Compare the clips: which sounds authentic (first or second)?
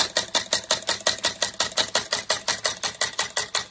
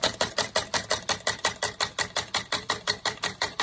first